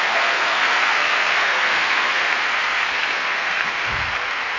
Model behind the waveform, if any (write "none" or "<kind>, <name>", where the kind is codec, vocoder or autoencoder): codec, SNAC